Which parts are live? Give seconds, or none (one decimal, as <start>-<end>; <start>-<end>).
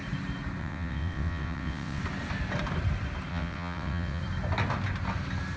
0.0-0.6; 2.0-3.3; 4.2-5.6